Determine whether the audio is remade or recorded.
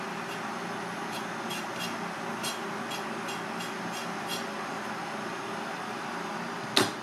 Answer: recorded